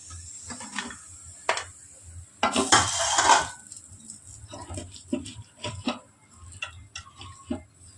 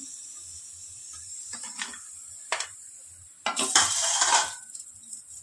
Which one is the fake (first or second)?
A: second